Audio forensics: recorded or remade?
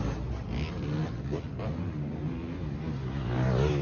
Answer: recorded